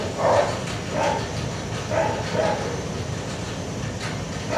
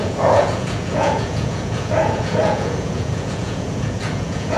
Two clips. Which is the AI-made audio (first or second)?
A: second